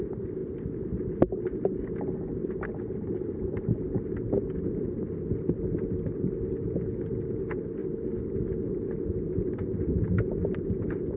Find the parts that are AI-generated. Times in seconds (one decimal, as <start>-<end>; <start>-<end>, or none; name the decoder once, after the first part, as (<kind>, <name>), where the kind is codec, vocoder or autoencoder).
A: none